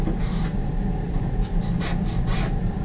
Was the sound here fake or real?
fake